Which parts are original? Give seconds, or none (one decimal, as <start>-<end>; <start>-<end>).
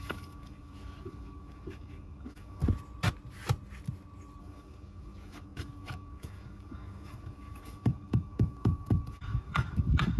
2.6-4.4